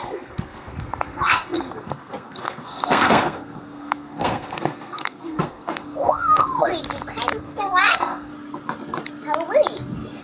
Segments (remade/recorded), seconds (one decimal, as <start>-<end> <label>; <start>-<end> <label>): 0.0-6.7 remade; 6.7-7.4 recorded; 7.4-8.3 remade; 8.3-10.2 recorded